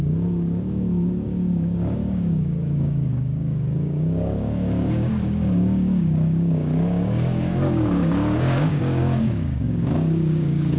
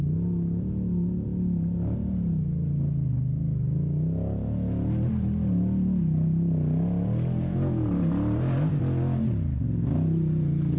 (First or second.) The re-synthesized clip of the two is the first